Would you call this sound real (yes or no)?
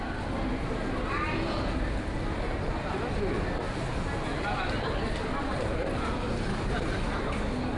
yes